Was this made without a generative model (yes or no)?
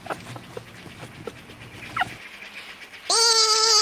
yes